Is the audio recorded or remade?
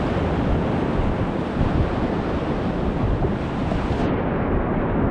recorded